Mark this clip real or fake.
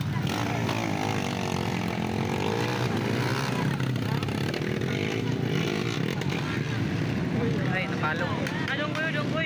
real